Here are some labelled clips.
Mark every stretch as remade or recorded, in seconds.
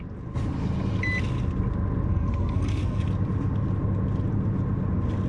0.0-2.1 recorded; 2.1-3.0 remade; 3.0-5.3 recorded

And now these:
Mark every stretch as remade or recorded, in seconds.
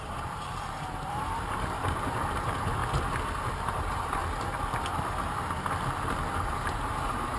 0.0-2.8 remade; 2.8-3.6 recorded; 3.6-4.2 remade; 4.2-6.5 recorded; 6.5-7.4 remade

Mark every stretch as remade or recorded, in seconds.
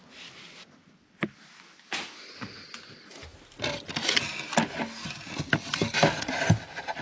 0.0-7.0 recorded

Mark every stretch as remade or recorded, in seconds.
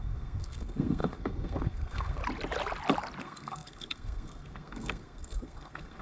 0.0-2.2 remade; 2.2-3.2 recorded; 3.2-6.0 remade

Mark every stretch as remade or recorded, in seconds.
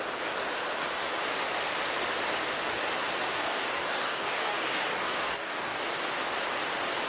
0.0-3.2 recorded; 3.2-5.8 remade; 5.8-7.1 recorded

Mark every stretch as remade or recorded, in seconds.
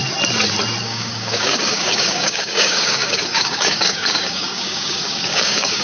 0.0-0.8 recorded; 0.8-5.8 remade